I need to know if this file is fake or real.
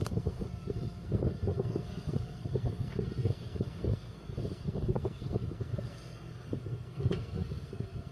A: fake